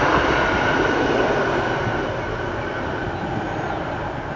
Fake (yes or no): no